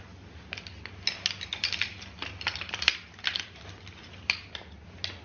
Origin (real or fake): real